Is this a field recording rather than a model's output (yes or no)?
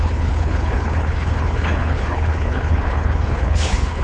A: no